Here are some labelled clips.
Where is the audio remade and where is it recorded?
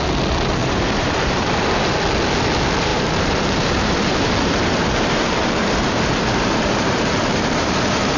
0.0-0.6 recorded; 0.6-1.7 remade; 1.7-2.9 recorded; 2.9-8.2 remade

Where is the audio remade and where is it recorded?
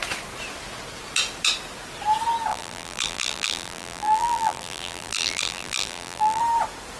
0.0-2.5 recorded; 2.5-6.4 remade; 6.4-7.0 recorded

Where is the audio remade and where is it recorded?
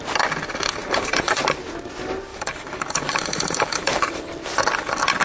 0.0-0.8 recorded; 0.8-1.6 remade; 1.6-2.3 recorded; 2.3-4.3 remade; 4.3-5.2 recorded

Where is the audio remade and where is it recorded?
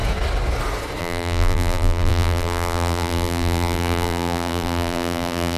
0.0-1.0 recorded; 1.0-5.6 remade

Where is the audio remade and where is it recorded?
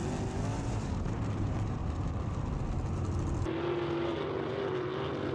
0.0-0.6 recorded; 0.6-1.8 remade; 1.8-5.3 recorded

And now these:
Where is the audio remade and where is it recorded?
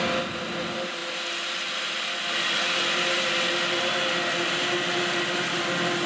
0.0-6.1 recorded